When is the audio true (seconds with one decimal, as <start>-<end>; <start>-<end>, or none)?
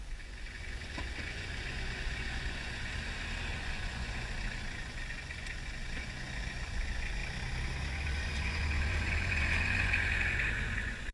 2.9-3.5; 7.2-7.9